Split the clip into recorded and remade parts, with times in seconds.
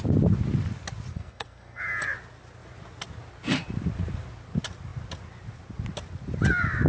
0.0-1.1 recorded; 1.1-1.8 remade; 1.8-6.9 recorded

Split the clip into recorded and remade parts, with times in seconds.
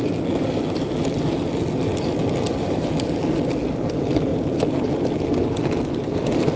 0.0-6.6 recorded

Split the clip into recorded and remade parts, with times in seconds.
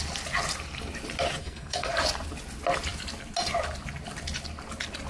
0.0-1.4 recorded; 1.4-1.9 remade; 1.9-5.1 recorded